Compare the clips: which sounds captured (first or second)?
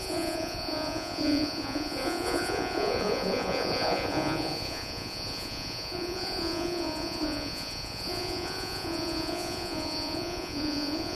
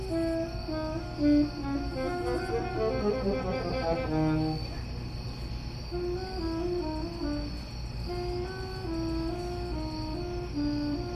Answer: second